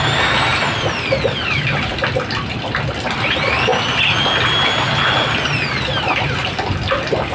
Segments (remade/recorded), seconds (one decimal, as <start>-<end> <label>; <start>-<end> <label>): 0.0-7.3 recorded